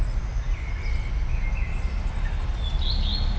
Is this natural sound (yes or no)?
yes